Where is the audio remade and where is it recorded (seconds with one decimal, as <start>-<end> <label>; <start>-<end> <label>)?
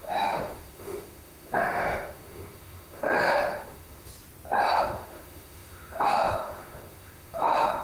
0.0-4.1 remade; 4.1-4.8 recorded; 4.8-7.8 remade